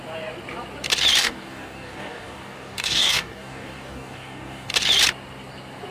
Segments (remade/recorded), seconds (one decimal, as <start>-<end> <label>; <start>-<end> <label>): 0.0-1.2 recorded; 1.2-4.7 remade; 4.7-5.9 recorded